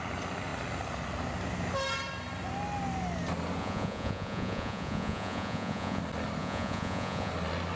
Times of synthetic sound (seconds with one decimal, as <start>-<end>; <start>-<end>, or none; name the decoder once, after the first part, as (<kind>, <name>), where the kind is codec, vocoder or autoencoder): 3.6-6.0 (vocoder, Vocos); 6.4-7.3